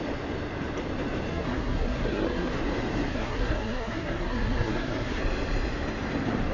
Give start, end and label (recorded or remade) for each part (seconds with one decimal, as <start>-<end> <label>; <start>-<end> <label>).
0.0-1.3 recorded; 1.3-2.5 remade; 2.5-3.1 recorded; 3.1-5.2 remade; 5.2-6.5 recorded

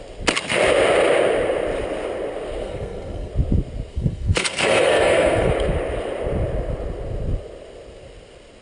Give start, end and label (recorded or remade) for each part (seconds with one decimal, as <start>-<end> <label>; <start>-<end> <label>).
0.0-2.6 recorded; 2.6-3.3 remade; 3.3-3.9 recorded; 3.9-5.5 remade; 5.5-8.6 recorded

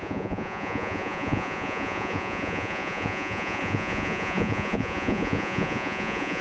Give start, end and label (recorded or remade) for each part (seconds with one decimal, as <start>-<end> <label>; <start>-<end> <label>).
0.0-6.4 remade

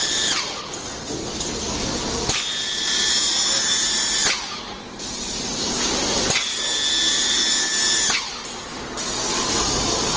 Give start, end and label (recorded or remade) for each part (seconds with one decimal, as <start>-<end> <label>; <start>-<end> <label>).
0.0-10.2 recorded